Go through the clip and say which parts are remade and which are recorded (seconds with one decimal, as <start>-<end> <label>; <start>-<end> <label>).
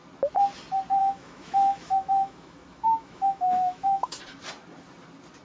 0.0-1.0 recorded; 1.0-4.2 remade; 4.2-5.4 recorded